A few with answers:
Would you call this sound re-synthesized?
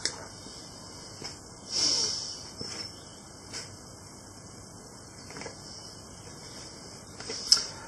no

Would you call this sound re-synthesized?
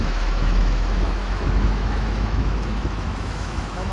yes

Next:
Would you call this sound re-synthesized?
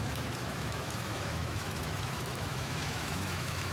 yes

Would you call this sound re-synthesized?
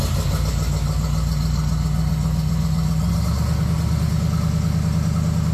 no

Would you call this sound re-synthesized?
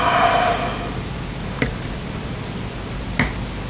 no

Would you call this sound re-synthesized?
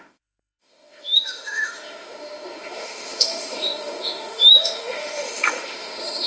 yes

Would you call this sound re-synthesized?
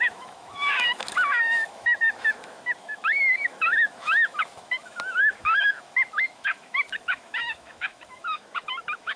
yes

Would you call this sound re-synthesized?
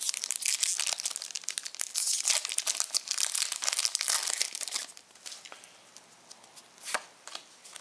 no